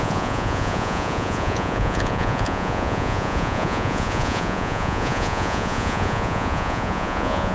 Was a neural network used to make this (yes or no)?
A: yes